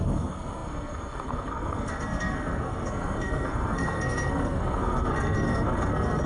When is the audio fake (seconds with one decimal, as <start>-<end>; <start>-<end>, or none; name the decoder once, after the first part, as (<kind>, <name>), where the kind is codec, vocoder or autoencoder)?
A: 0.0-6.3 (codec, SNAC)